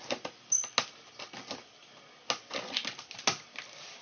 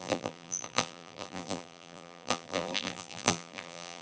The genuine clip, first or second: first